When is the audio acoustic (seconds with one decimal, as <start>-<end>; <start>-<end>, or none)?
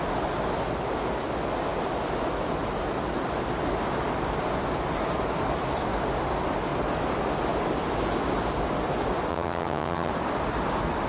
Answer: 0.0-9.3; 10.1-11.1